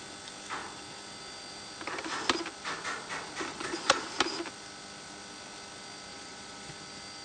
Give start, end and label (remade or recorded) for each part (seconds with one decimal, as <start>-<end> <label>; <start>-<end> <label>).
0.0-3.5 recorded; 3.5-4.0 remade; 4.0-6.1 recorded; 6.1-6.7 remade; 6.7-7.2 recorded